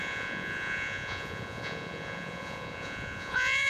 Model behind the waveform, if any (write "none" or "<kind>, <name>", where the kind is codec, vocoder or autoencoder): vocoder, Vocos